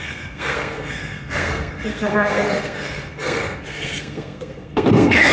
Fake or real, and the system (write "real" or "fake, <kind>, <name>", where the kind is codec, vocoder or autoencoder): fake, codec, SNAC